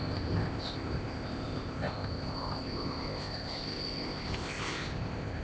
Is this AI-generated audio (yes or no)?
yes